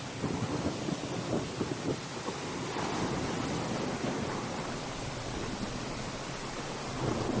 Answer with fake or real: real